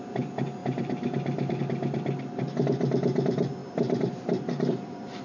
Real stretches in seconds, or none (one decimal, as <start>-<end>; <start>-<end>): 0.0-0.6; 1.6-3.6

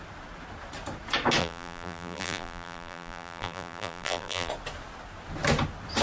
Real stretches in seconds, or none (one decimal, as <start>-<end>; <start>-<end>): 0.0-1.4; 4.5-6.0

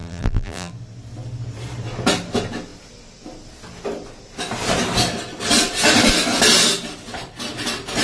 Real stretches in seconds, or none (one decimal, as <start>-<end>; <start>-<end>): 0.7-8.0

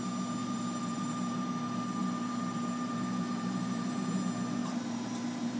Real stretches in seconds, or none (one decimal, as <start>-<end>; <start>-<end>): 0.0-0.4; 1.5-2.0; 4.1-4.6

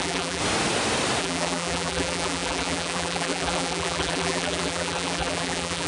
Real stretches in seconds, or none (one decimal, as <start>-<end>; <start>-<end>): 0.4-1.2